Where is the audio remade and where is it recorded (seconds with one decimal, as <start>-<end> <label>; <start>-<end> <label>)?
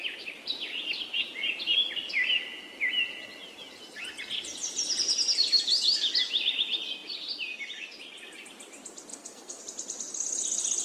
0.0-9.1 recorded; 9.1-9.6 remade; 9.6-10.8 recorded